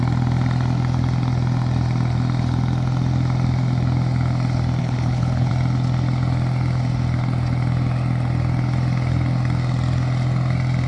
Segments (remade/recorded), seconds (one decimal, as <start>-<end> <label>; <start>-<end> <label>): 0.0-4.8 recorded; 4.8-5.5 remade; 5.5-10.9 recorded